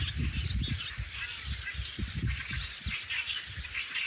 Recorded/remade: recorded